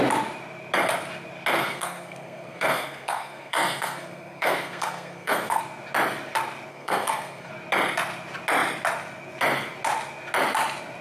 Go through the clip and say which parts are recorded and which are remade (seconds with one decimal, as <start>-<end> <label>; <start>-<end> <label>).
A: 0.0-1.6 recorded; 1.6-5.6 remade; 5.6-6.7 recorded; 6.7-7.5 remade; 7.5-11.0 recorded